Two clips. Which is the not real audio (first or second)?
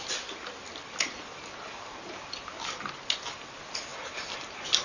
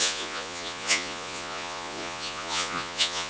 second